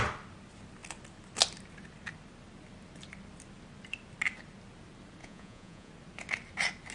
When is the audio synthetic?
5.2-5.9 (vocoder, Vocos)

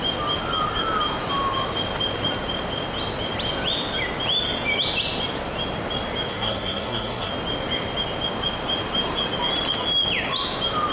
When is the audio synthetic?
6.3-7.3 (codec, SNAC)